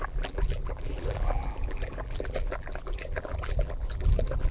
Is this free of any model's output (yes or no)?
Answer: no